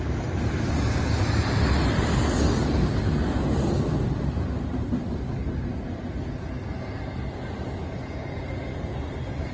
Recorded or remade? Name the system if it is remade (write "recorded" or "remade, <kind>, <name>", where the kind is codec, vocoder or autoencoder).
recorded